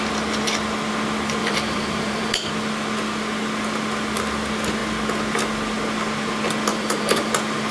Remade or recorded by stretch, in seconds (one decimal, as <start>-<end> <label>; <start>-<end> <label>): 0.0-1.4 recorded; 1.4-2.5 remade; 2.5-6.7 recorded; 6.7-7.3 remade; 7.3-7.7 recorded